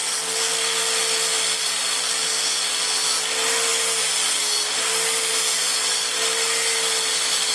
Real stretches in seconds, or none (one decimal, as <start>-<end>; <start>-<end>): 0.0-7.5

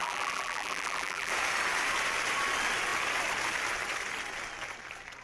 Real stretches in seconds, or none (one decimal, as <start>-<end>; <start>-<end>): 1.3-5.2

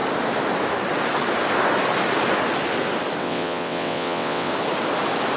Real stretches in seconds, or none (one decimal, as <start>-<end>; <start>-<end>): 0.0-3.2; 4.5-5.4